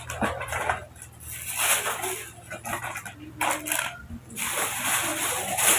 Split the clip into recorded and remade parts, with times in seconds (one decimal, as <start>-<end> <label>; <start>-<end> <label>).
0.0-5.8 recorded